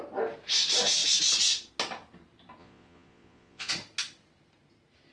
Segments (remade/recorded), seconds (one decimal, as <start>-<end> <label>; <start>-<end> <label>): 0.0-2.6 recorded; 2.6-3.7 remade; 3.7-5.1 recorded